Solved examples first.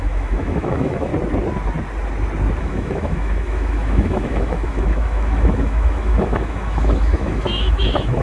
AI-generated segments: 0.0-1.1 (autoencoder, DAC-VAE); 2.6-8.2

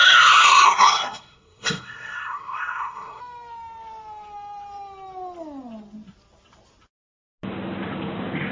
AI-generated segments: 0.0-3.2 (codec, SNAC)